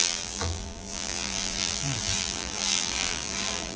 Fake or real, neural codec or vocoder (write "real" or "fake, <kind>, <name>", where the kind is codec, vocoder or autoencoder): fake, vocoder, BigVGAN v2